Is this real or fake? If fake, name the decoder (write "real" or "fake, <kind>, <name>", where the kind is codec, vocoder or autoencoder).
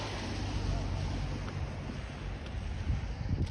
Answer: real